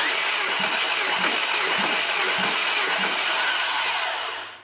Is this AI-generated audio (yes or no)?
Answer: yes